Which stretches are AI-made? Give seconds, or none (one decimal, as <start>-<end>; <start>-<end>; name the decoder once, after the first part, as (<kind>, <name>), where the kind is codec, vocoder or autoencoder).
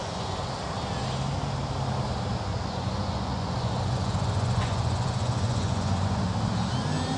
0.0-0.6 (vocoder, Vocos); 2.5-6.2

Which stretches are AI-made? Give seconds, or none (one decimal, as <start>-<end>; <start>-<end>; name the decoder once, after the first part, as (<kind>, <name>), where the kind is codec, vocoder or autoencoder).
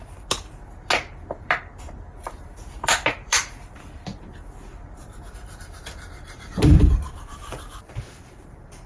0.0-8.9 (vocoder, BigVGAN v2)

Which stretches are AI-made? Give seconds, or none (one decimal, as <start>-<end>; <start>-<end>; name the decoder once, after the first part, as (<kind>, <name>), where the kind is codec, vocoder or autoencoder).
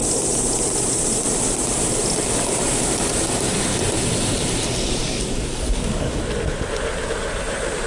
5.0-6.2 (codec, DAC)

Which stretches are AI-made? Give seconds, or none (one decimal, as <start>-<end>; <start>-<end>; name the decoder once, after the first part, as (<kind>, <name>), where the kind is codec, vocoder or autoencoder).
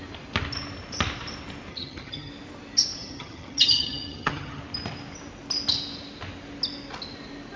1.7-2.3 (vocoder, HiFi-GAN); 3.0-4.6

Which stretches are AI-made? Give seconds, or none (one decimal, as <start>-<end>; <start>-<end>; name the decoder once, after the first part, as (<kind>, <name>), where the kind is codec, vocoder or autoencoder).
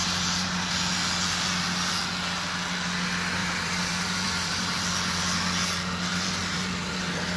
0.0-0.8 (vocoder, BigVGAN v2); 3.4-4.8; 6.1-7.0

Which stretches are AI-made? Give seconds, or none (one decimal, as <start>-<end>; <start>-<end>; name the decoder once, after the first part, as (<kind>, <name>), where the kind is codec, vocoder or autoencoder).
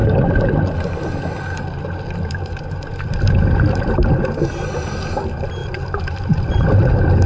none